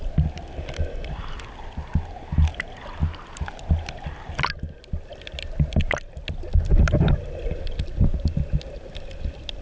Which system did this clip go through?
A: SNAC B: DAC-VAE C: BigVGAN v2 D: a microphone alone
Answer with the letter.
D